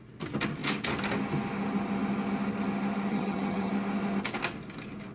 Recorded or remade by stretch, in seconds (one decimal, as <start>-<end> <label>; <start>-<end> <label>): 0.0-3.1 recorded; 3.1-3.7 remade; 3.7-5.1 recorded